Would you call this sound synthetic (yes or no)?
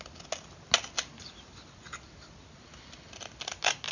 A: no